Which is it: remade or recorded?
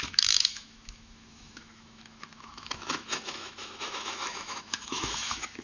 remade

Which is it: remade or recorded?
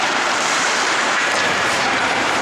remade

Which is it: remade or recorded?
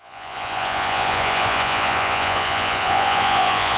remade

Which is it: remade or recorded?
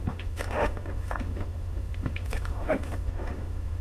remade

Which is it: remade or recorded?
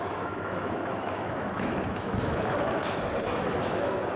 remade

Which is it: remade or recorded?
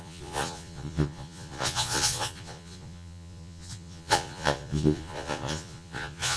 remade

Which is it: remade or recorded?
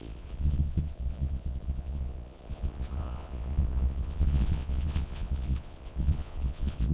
remade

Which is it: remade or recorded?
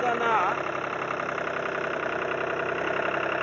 recorded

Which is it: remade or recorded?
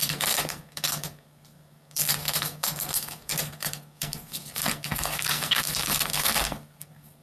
remade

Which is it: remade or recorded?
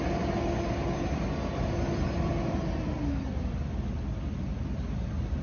recorded